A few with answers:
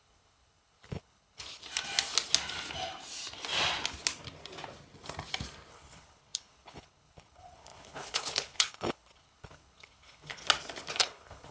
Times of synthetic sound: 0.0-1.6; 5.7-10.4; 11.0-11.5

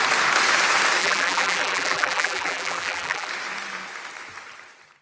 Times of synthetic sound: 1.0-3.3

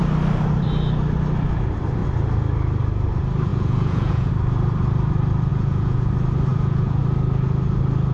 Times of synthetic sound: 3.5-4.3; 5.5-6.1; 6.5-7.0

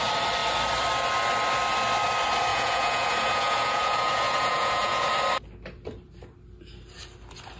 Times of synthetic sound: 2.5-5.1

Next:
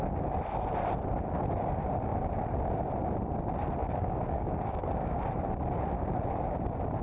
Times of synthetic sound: 3.8-5.2

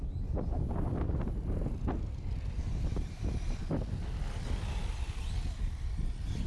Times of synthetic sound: none